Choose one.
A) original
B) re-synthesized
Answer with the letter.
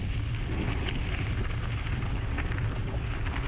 A